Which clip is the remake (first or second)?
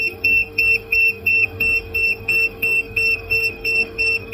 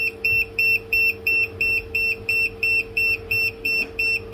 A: first